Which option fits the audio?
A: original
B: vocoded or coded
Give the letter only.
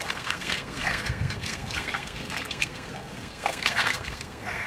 B